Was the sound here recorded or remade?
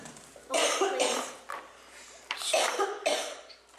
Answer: recorded